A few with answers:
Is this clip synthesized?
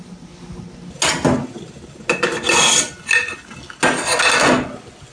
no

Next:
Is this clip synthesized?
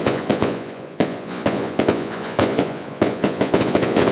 yes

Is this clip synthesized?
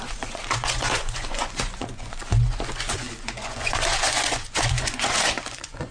yes